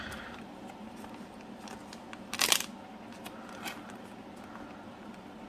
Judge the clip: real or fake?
real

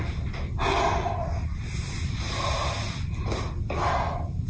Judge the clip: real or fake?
real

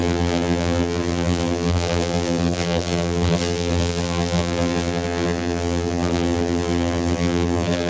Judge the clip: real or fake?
fake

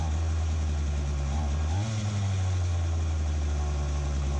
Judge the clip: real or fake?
real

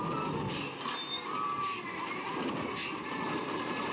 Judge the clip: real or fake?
real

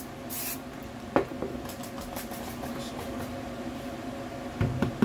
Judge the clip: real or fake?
real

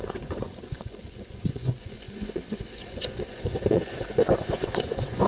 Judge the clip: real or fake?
fake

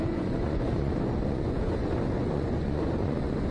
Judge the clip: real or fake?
fake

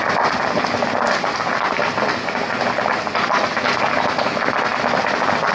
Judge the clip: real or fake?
real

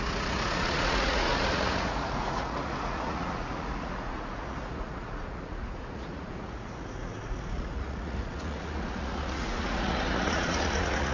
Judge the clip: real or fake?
fake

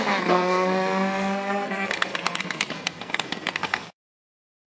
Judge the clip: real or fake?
fake